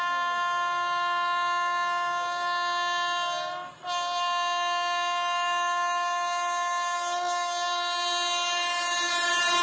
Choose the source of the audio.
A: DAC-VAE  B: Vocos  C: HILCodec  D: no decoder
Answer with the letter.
D